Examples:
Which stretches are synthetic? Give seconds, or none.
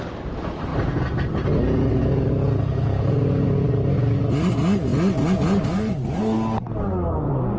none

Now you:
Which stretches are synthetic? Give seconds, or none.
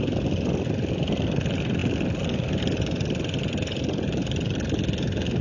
none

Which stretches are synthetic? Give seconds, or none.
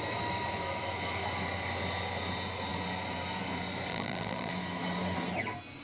3.9-4.5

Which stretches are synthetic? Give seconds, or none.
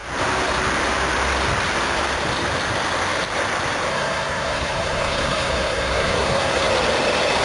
3.9-6.7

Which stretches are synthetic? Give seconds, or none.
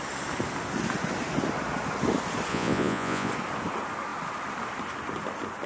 2.5-3.3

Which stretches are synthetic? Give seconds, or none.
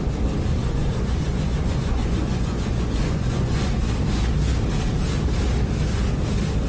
0.6-3.9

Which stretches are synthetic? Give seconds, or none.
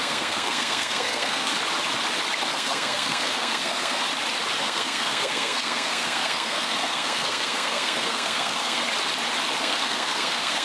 0.0-1.5; 2.5-4.0; 4.6-8.8; 9.6-10.6